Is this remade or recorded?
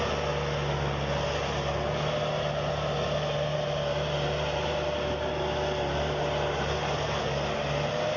recorded